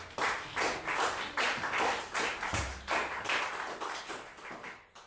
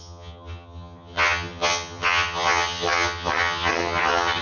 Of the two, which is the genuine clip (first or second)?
first